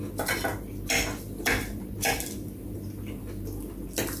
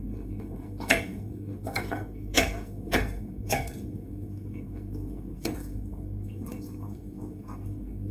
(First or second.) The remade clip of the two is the second